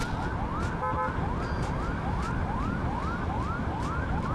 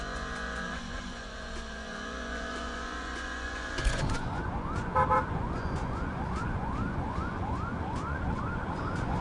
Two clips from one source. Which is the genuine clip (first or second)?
first